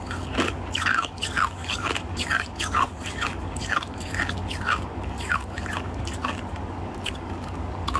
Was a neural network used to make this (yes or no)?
yes